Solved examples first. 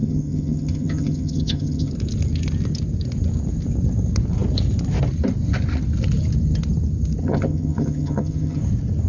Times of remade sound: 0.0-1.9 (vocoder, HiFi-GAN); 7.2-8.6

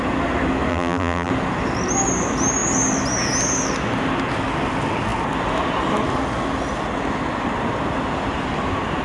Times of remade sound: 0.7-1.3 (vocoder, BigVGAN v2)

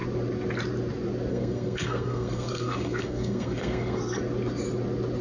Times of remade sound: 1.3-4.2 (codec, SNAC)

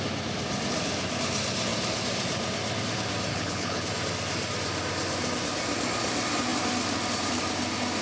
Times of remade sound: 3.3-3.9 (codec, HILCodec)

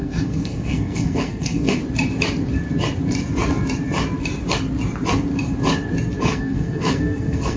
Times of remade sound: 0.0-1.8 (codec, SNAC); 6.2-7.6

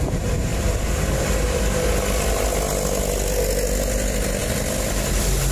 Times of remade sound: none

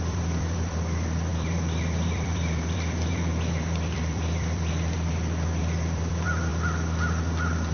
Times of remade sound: 0.0-6.5 (vocoder, BigVGAN v2)

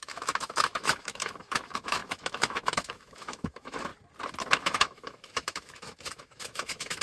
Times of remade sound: 0.0-3.9 (autoencoder, DAC-VAE); 4.6-7.0